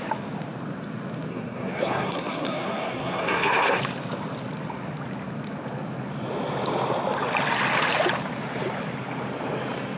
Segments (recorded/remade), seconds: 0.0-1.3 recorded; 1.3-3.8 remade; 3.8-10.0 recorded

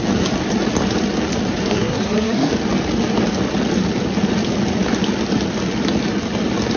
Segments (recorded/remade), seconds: 0.0-1.7 recorded; 1.7-2.5 remade; 2.5-6.8 recorded

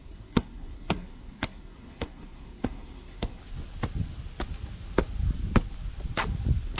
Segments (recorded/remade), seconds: 0.0-3.4 remade; 3.4-6.8 recorded